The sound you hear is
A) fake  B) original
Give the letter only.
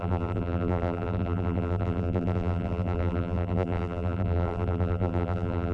A